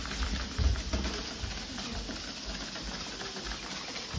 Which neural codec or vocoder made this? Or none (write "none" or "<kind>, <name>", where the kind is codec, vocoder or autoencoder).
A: none